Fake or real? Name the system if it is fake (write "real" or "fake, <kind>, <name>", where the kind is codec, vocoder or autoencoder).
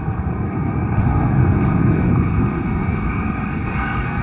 fake, codec, SNAC